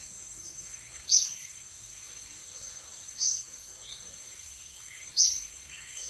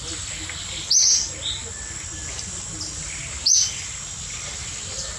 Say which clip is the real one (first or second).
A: second